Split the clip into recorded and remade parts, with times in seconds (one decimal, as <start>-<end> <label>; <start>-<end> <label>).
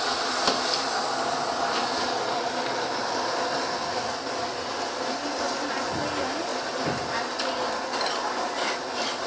0.0-9.3 recorded